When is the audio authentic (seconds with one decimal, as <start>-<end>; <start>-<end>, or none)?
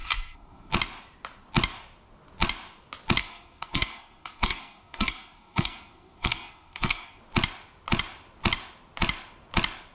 0.7-3.2; 7.2-9.9